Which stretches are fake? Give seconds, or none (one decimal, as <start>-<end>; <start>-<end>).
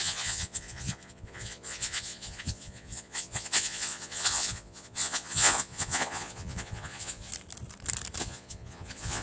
0.0-7.3; 8.2-9.2